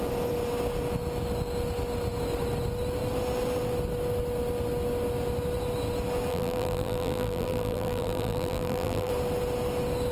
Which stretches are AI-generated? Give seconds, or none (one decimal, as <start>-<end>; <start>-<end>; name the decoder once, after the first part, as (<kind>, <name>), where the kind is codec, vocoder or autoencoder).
6.3-9.1 (vocoder, BigVGAN v2)